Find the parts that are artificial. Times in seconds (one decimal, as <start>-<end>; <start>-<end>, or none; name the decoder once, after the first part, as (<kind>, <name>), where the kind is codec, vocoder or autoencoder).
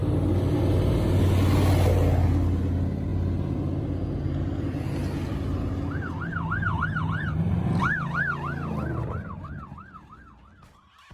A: none